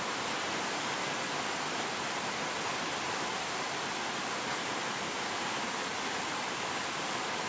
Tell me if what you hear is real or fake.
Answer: fake